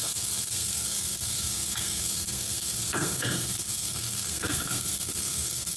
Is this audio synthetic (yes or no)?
yes